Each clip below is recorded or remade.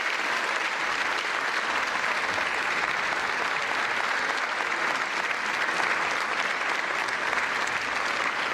recorded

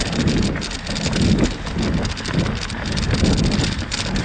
recorded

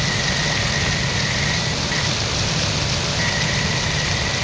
recorded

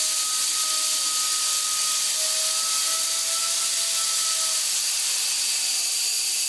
recorded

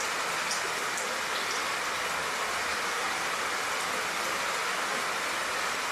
recorded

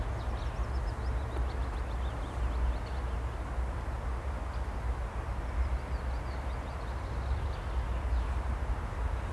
recorded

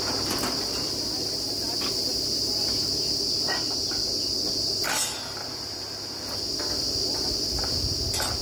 recorded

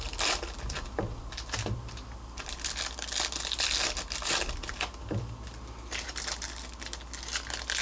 recorded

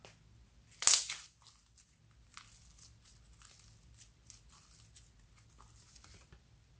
recorded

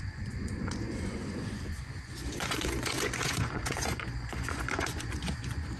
remade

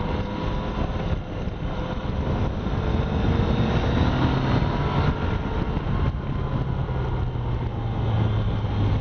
recorded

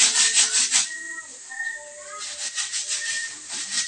remade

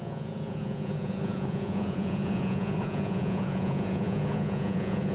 remade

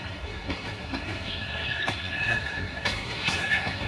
remade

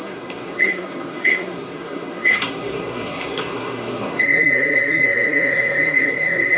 remade